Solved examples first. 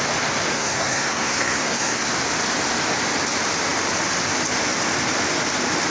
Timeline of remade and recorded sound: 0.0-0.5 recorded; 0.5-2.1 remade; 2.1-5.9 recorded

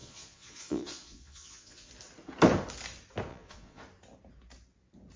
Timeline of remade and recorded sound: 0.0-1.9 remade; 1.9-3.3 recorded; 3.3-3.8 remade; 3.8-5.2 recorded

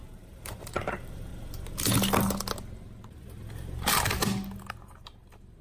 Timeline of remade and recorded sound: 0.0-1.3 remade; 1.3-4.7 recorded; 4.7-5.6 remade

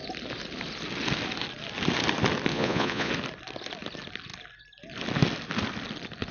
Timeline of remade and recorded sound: 0.0-2.5 recorded; 2.5-3.1 remade; 3.1-6.3 recorded